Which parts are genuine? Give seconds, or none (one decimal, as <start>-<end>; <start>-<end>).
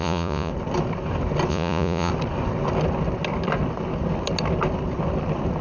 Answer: 0.5-1.5; 2.1-5.6